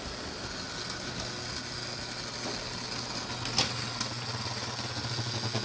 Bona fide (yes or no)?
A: yes